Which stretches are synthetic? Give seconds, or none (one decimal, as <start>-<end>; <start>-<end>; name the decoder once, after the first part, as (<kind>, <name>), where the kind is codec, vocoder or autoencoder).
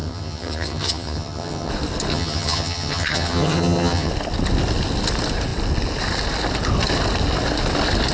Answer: 0.0-1.7 (vocoder, HiFi-GAN); 2.1-4.1